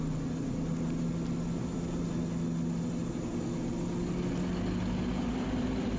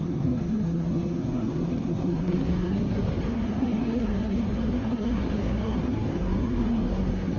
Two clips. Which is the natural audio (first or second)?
first